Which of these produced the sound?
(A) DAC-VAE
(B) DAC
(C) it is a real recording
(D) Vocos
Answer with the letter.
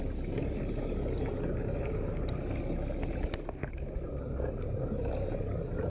C